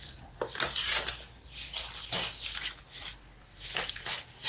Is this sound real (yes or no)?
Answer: yes